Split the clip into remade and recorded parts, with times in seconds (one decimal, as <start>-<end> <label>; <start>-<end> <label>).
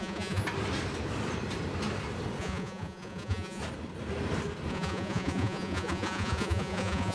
0.0-0.4 remade; 0.4-2.4 recorded; 2.4-3.6 remade; 3.6-4.7 recorded; 4.7-7.1 remade